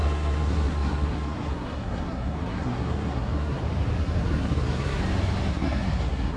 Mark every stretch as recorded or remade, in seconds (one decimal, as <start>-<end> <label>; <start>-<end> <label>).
0.0-3.6 remade; 3.6-4.0 recorded; 4.0-5.0 remade; 5.0-5.5 recorded; 5.5-6.4 remade